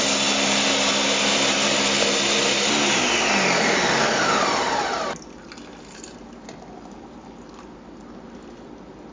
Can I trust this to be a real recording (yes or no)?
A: yes